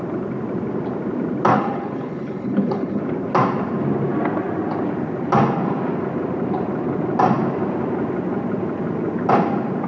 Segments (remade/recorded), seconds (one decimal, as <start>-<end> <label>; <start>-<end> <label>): 0.0-1.5 recorded; 1.5-3.0 remade; 3.0-9.9 recorded